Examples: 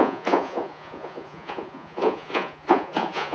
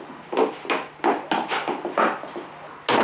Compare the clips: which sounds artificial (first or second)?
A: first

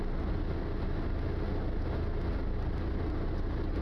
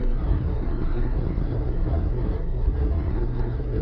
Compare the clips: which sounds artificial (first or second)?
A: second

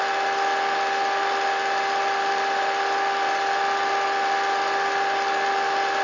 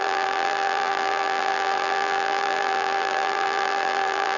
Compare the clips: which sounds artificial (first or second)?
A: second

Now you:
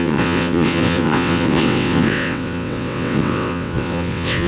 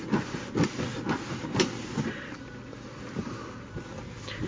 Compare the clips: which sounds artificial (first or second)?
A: first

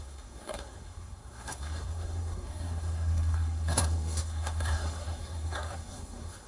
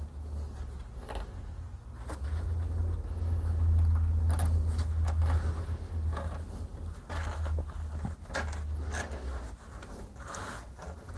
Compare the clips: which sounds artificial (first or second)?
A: first